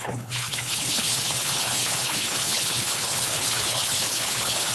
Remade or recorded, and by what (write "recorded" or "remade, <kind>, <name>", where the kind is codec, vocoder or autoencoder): remade, codec, HILCodec